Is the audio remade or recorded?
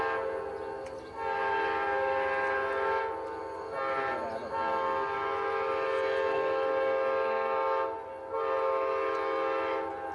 recorded